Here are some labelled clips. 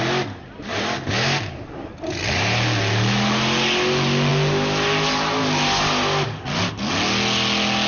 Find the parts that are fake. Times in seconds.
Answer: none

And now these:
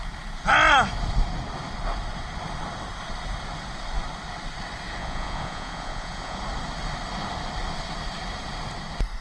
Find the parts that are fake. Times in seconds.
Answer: 5.0-6.4

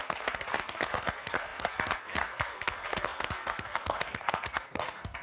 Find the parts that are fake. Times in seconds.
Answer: 0.0-5.2

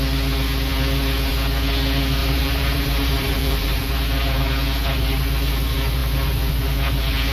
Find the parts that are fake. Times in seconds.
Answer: 2.2-3.9

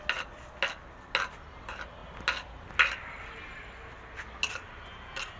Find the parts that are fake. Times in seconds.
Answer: none